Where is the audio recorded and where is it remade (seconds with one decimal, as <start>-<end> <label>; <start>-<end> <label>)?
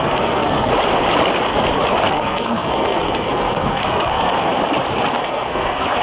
0.0-0.7 remade; 0.7-2.1 recorded; 2.1-4.5 remade; 4.5-5.1 recorded; 5.1-6.0 remade